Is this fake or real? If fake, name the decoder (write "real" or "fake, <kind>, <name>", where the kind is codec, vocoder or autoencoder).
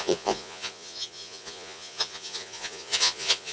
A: fake, vocoder, Vocos